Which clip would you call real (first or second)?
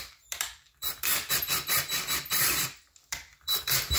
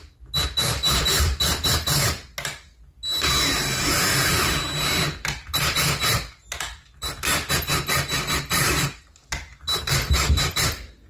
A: second